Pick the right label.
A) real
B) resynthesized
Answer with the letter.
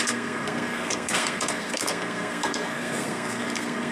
B